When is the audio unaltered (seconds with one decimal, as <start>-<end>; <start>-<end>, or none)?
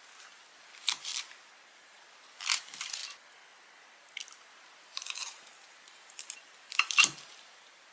1.1-1.7; 3.0-4.5